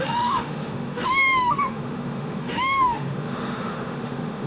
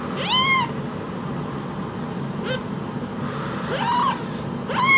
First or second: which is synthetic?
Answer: first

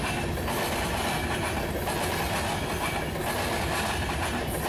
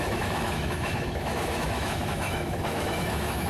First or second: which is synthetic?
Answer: second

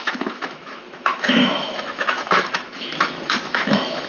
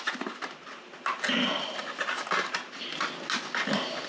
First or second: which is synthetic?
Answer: first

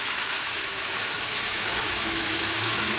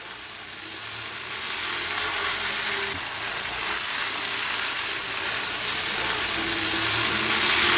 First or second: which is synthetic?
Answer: first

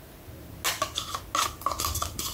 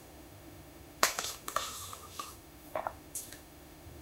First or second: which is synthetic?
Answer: second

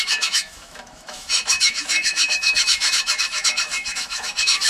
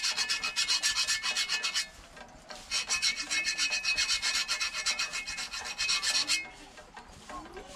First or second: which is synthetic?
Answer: first